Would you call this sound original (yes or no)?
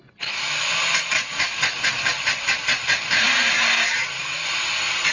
yes